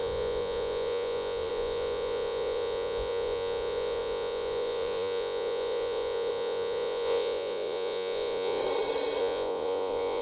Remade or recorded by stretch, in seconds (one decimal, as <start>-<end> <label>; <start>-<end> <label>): 0.0-8.6 remade; 8.6-9.2 recorded; 9.2-10.2 remade